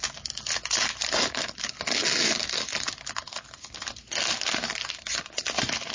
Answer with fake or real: real